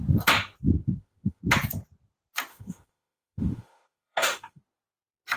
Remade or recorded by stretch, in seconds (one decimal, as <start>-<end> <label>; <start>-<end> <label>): 0.0-0.8 recorded; 0.8-1.4 remade; 1.4-2.5 recorded; 2.5-4.6 remade; 4.6-5.4 recorded